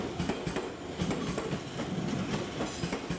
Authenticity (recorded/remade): recorded